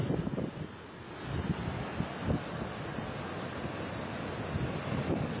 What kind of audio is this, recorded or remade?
recorded